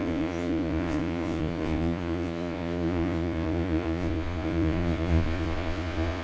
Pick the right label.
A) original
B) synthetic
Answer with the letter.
B